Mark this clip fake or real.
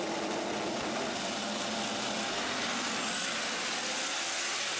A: real